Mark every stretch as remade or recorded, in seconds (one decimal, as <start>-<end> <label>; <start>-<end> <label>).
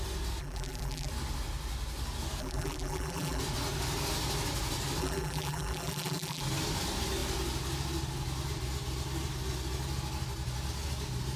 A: 0.0-0.4 recorded; 0.4-1.1 remade; 1.1-2.4 recorded; 2.4-3.4 remade; 3.4-5.0 recorded; 5.0-6.4 remade; 6.4-11.4 recorded